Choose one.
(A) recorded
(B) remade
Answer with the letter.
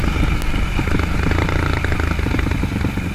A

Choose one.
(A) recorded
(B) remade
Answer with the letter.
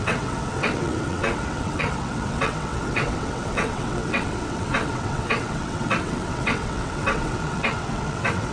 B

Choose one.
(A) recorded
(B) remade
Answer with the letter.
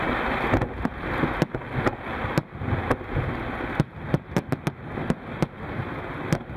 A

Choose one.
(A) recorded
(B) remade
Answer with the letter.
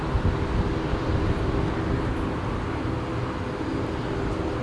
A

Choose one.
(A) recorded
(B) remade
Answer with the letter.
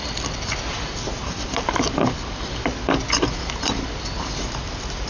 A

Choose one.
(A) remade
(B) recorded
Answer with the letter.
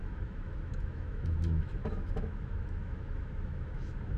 A